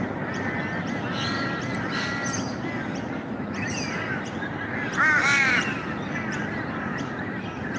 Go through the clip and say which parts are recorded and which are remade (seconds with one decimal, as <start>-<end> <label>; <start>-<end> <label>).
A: 0.0-7.8 recorded